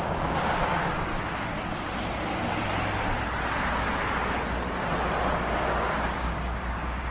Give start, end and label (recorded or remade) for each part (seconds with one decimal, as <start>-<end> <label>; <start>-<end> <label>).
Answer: 0.0-1.1 remade; 1.1-5.4 recorded; 5.4-7.1 remade